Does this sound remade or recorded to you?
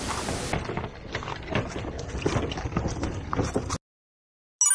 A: recorded